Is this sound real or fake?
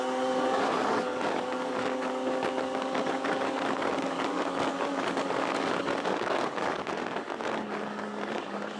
fake